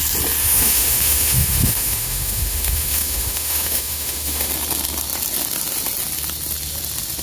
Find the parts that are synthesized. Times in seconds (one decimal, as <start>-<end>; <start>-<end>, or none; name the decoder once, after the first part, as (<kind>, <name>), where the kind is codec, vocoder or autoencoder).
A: 0.4-4.5 (autoencoder, DAC-VAE)